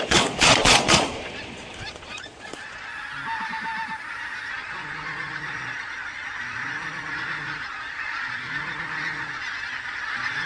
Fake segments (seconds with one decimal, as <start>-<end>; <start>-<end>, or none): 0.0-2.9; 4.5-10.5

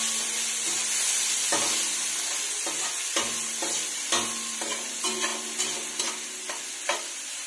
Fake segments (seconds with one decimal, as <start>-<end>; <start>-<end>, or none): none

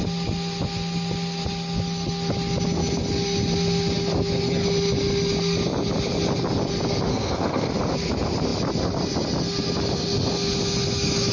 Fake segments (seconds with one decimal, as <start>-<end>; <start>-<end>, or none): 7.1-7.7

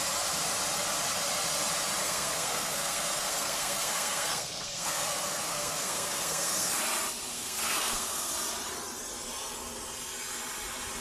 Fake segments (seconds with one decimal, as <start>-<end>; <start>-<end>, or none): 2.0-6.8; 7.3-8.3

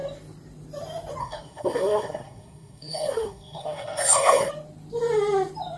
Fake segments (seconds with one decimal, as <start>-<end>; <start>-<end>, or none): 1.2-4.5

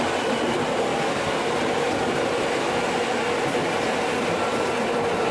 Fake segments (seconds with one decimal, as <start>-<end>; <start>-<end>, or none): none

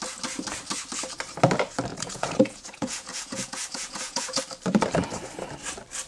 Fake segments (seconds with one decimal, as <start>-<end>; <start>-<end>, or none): 1.9-4.4